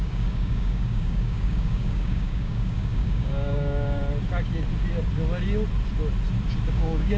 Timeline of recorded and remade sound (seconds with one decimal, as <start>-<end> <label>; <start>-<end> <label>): 0.0-4.0 remade; 4.0-6.7 recorded; 6.7-7.2 remade